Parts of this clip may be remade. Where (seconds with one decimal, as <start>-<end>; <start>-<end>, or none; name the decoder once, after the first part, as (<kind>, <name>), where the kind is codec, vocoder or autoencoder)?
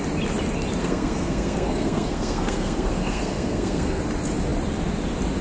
0.8-4.0 (codec, SNAC)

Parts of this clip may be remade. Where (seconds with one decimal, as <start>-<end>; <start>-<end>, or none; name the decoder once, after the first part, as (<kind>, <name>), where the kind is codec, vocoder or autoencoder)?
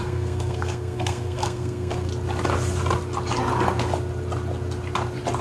0.0-2.1 (codec, SNAC)